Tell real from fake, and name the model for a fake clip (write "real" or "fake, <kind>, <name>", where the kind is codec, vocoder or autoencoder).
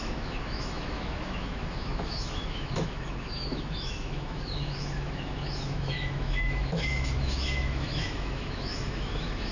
fake, autoencoder, DAC-VAE